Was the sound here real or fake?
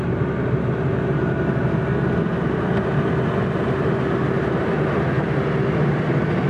real